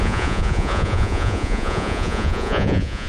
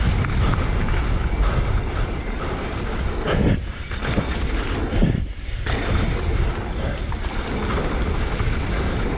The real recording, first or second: second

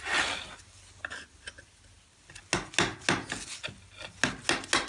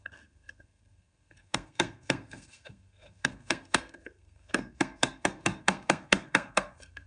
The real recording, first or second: first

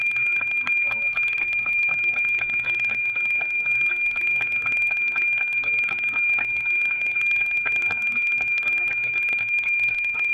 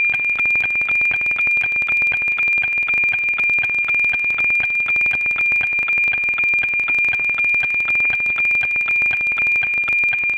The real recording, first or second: second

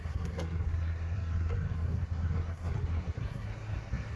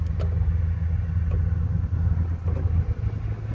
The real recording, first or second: second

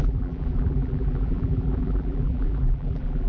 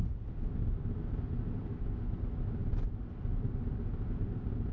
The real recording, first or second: second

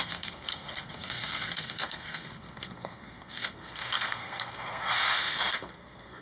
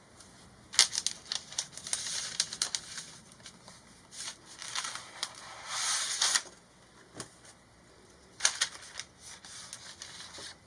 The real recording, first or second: second